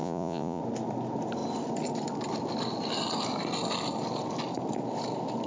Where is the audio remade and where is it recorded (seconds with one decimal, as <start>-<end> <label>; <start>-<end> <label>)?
0.0-0.6 remade; 0.6-5.5 recorded

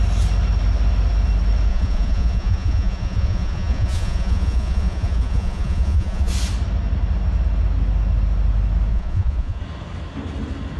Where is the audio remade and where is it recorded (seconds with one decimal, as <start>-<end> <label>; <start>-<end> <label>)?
0.0-1.7 recorded; 1.7-6.3 remade; 6.3-8.9 recorded; 8.9-9.6 remade; 9.6-10.8 recorded